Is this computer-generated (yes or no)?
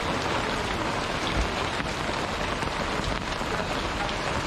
no